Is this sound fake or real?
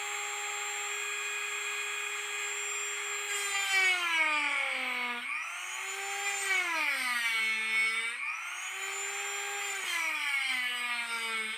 real